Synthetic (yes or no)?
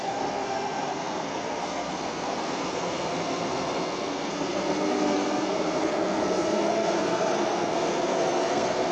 yes